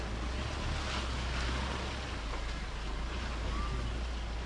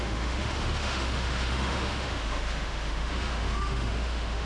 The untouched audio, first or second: first